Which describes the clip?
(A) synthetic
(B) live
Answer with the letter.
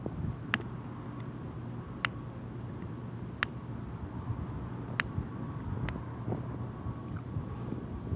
B